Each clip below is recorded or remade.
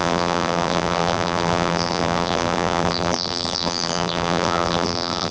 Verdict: remade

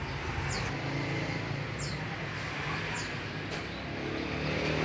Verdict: recorded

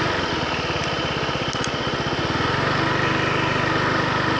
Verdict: remade